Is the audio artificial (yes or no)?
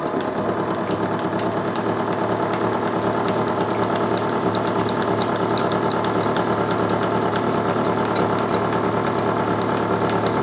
no